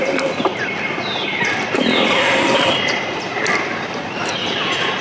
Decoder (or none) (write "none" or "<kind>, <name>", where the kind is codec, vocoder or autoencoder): vocoder, BigVGAN v2